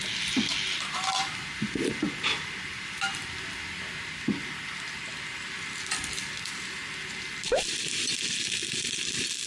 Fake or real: real